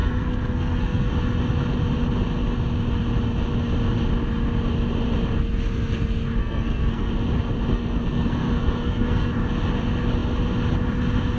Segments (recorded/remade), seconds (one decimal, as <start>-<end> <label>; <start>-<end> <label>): 0.0-1.1 remade; 1.1-6.4 recorded; 6.4-7.1 remade; 7.1-7.7 recorded; 7.7-9.3 remade; 9.3-11.4 recorded